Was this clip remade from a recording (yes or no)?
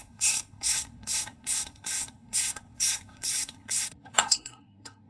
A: yes